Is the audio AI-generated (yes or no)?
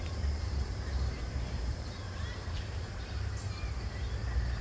yes